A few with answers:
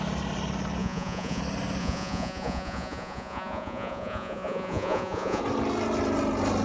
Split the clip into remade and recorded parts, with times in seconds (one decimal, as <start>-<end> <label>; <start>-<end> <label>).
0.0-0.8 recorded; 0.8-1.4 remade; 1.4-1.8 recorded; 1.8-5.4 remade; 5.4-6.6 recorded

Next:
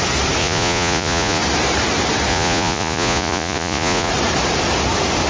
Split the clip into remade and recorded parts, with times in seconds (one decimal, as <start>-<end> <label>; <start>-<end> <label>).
0.0-0.4 recorded; 0.4-1.4 remade; 1.4-2.3 recorded; 2.3-4.1 remade; 4.1-5.3 recorded

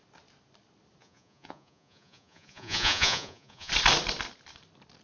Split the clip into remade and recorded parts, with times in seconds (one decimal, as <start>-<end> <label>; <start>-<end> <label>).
0.0-1.0 recorded; 1.0-3.7 remade; 3.7-5.0 recorded

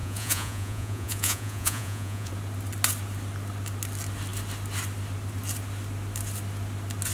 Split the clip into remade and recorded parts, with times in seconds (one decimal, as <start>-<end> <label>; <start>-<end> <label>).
0.0-2.3 remade; 2.3-7.1 recorded